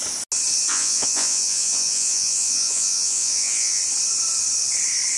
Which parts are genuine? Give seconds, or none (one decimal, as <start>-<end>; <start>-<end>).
0.0-0.7; 3.8-5.2